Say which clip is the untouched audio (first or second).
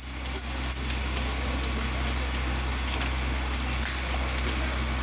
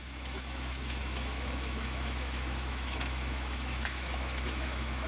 first